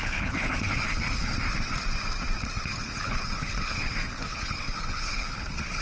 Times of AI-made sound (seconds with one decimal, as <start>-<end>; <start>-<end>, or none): 0.0-1.3; 2.6-5.8